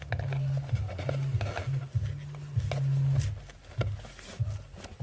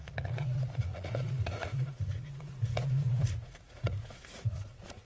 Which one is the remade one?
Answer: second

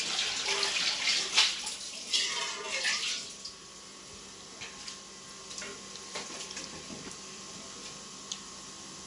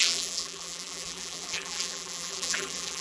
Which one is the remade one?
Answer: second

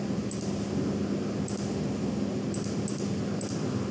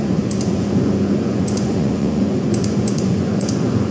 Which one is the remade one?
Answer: second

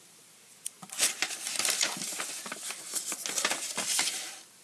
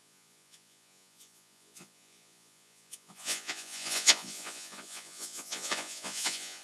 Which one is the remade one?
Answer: second